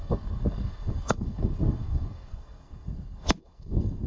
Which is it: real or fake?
fake